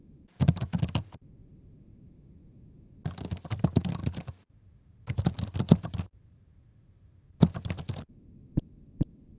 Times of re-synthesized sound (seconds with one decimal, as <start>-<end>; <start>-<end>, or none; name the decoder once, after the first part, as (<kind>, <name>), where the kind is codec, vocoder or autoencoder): 4.0-7.4 (vocoder, BigVGAN v2)